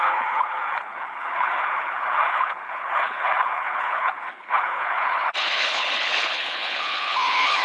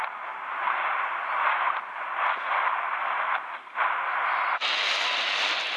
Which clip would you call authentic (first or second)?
second